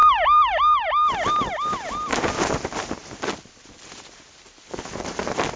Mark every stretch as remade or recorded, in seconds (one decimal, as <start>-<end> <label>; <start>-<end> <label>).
0.0-2.5 remade; 2.5-3.0 recorded; 3.0-5.6 remade